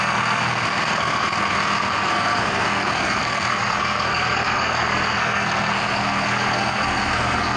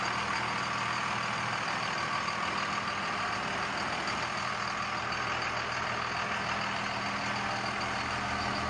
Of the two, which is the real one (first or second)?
second